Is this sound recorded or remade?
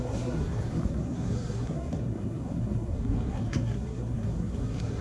remade